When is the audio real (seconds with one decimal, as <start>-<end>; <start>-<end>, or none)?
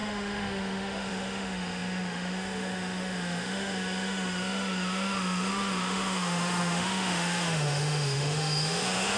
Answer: none